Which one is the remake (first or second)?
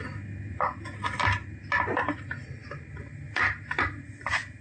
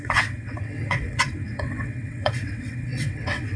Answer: second